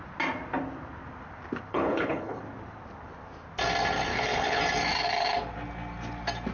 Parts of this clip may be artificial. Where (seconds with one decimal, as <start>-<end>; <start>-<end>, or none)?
1.7-2.4; 4.1-4.6